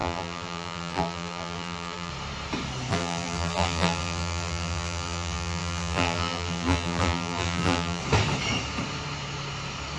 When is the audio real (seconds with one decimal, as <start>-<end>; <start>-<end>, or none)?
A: 2.1-2.9; 8.0-10.0